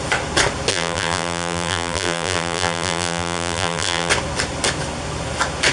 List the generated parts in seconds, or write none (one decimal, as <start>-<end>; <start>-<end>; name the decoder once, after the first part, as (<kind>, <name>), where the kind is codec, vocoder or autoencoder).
0.7-4.1 (vocoder, BigVGAN v2)